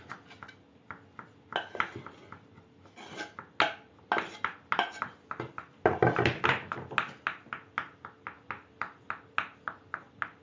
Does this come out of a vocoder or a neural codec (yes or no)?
no